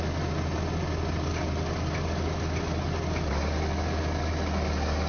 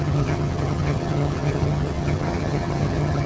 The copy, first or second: second